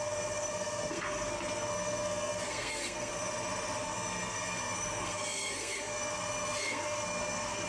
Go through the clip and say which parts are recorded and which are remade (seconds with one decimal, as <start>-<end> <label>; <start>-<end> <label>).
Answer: 0.0-3.2 remade; 3.2-3.8 recorded; 3.8-7.7 remade